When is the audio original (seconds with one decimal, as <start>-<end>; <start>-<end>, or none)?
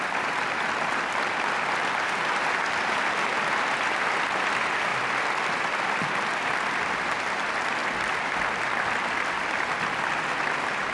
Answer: 0.0-10.9